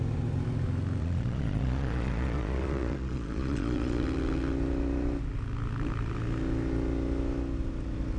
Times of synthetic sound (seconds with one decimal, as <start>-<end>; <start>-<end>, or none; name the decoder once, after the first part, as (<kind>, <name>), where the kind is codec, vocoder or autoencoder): 1.0-4.0 (vocoder, Vocos)